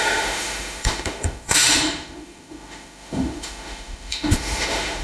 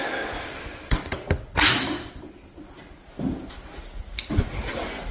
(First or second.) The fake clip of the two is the first